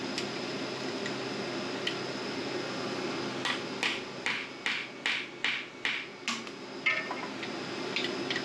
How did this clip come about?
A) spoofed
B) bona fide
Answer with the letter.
B